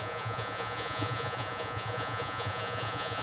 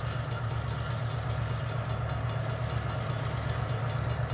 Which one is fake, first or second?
first